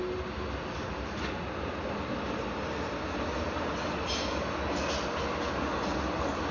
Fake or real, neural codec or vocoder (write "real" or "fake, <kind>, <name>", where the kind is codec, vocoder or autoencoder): real